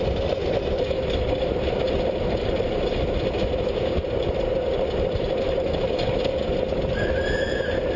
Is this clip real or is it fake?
real